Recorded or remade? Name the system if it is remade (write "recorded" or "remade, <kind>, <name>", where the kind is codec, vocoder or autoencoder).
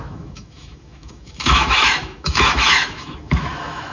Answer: remade, autoencoder, DAC-VAE